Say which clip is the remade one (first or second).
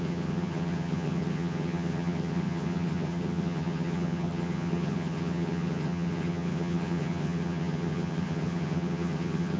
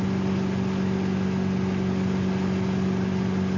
first